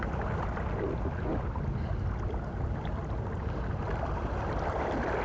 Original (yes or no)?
yes